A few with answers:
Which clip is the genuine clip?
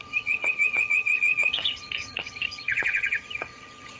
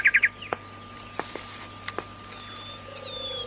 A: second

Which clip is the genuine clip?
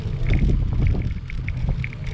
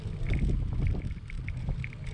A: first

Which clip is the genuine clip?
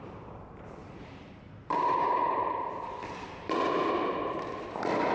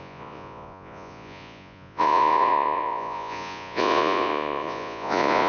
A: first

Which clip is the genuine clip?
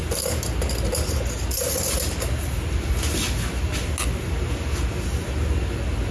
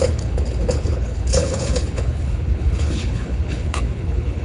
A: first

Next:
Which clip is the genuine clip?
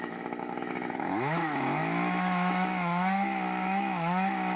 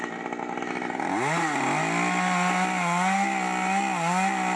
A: second